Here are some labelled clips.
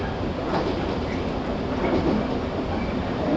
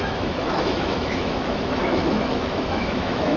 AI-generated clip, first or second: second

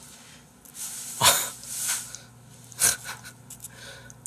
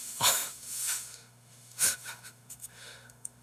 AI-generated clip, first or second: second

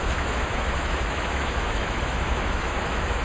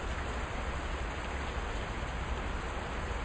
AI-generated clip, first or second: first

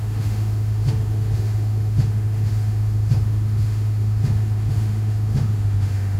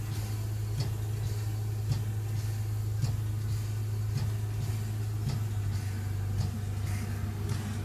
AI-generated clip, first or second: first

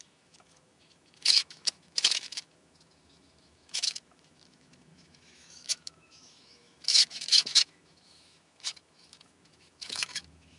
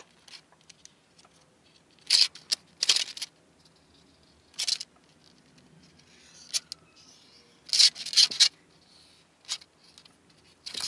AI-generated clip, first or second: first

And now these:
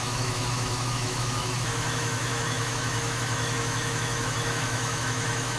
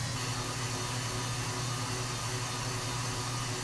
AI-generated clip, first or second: first